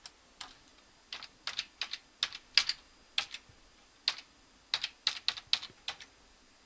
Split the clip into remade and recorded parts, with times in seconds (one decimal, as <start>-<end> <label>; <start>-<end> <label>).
0.0-6.7 recorded